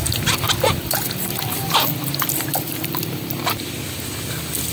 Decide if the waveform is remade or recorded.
recorded